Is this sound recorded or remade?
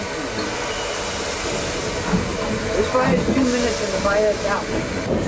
recorded